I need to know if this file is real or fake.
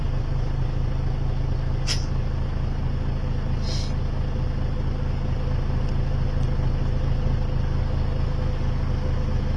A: real